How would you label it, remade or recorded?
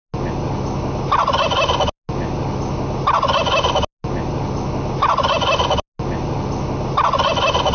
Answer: recorded